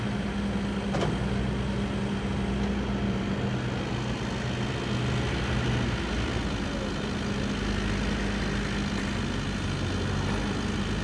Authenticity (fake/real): real